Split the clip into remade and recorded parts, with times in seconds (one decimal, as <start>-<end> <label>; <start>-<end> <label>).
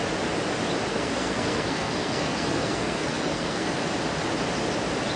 0.0-0.9 recorded; 0.9-3.8 remade; 3.8-5.2 recorded